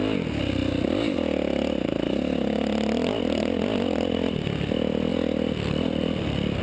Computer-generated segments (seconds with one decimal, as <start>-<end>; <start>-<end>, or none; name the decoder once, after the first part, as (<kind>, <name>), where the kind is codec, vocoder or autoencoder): none